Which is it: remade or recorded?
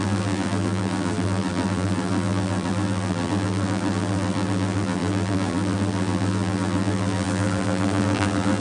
remade